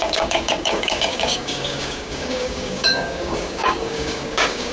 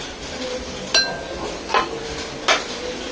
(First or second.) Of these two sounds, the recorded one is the second